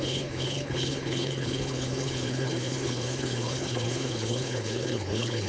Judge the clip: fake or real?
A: fake